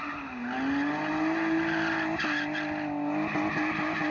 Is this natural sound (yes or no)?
yes